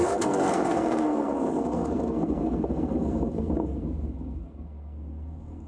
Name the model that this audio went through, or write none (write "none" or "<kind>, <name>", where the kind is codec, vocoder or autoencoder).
codec, SNAC